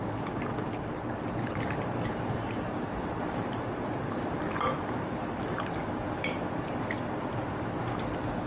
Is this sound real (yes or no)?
yes